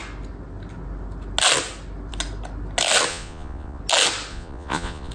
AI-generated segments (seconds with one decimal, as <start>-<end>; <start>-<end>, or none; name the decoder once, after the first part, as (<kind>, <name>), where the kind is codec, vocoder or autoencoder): 3.1-3.8 (vocoder, Vocos); 4.3-5.1